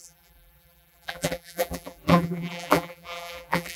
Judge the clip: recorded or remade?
remade